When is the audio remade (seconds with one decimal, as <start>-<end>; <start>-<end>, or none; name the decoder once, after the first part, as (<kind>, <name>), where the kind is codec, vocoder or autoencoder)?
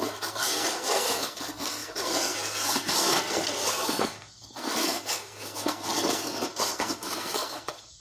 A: 0.0-8.0 (codec, SNAC)